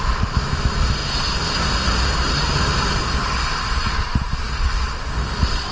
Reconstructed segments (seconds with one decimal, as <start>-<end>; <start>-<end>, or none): none